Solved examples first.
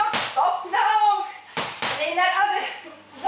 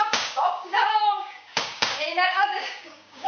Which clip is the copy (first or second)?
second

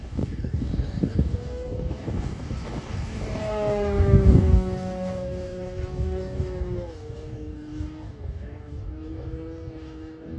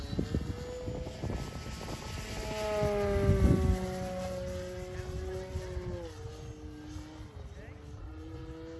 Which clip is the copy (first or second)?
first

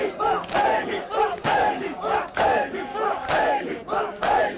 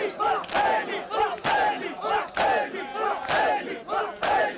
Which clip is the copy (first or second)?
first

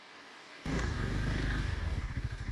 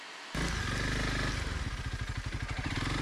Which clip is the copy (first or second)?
first